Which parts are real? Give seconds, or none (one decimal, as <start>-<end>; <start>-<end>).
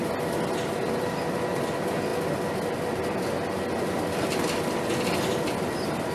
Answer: 0.0-6.1